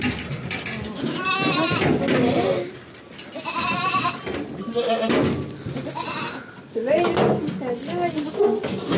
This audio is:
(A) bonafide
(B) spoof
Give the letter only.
A